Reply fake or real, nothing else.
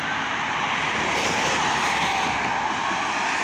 real